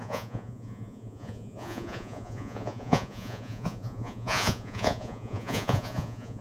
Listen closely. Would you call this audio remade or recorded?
remade